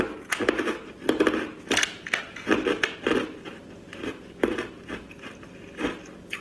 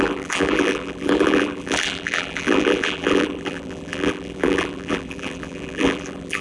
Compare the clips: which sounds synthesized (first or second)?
second